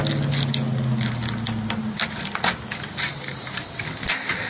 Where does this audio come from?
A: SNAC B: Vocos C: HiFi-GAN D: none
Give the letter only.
D